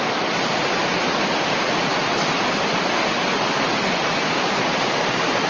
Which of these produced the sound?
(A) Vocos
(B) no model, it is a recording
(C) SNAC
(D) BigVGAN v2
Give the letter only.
B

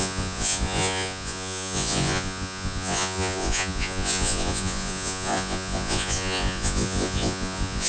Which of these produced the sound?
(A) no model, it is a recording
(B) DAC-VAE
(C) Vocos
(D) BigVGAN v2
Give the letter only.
C